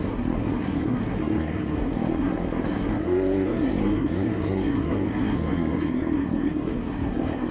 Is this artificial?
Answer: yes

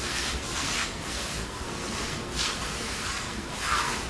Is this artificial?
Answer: yes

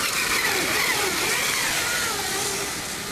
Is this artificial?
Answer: no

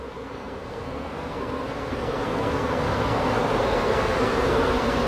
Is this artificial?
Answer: yes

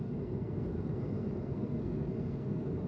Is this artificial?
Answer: yes